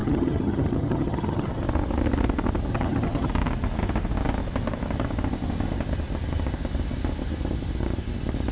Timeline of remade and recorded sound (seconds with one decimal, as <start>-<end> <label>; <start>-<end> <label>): 0.0-1.6 remade; 1.6-2.7 recorded; 2.7-3.3 remade; 3.3-8.5 recorded